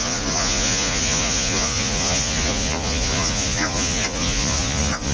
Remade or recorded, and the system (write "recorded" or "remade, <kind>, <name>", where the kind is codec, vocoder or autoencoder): remade, vocoder, Vocos